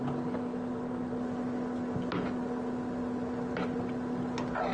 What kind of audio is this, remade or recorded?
recorded